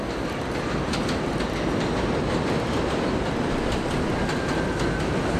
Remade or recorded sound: recorded